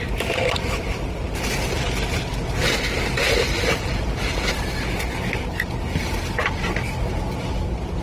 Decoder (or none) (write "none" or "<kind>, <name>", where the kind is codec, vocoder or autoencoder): none